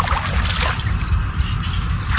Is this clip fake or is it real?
real